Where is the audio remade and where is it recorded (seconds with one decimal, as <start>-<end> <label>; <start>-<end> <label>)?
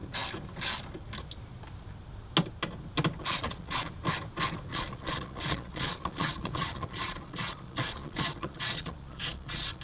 0.0-3.2 recorded; 3.2-3.9 remade; 3.9-4.7 recorded; 4.7-9.8 remade